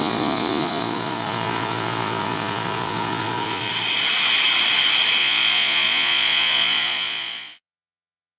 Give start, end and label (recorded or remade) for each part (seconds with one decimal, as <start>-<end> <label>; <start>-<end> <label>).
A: 0.0-3.7 remade; 3.7-5.2 recorded; 5.2-8.4 remade